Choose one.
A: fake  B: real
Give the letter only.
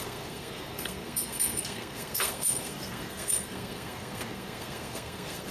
A